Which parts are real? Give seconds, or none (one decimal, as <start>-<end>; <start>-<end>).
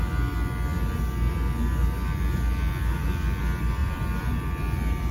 0.0-3.8; 4.4-5.1